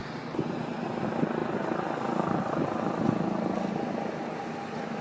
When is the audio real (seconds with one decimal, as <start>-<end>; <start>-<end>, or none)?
0.0-5.0